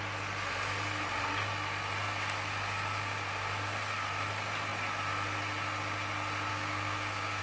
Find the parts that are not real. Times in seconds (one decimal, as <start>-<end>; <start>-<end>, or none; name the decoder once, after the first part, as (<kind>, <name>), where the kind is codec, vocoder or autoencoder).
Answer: 6.5-7.4 (codec, DAC)